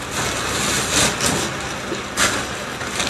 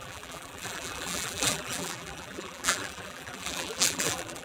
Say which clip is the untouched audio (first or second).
first